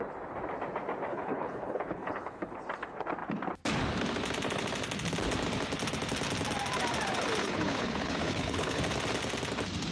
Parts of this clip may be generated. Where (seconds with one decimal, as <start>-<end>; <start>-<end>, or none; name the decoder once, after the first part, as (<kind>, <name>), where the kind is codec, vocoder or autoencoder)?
1.1-2.5 (codec, HILCodec); 7.4-8.8